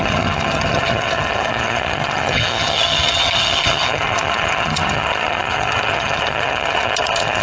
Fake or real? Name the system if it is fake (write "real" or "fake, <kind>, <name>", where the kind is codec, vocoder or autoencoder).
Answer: fake, vocoder, HiFi-GAN